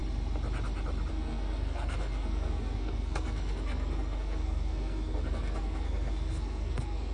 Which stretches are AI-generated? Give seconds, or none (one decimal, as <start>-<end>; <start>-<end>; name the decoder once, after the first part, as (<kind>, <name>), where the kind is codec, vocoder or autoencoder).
1.1-7.1 (codec, SNAC)